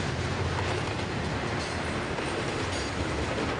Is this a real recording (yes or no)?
no